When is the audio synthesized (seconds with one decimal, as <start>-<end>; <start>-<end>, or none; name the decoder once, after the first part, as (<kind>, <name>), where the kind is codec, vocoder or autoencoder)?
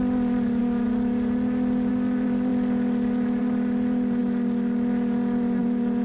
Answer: 0.0-0.6 (vocoder, BigVGAN v2); 1.9-2.5; 3.4-4.2; 5.6-6.0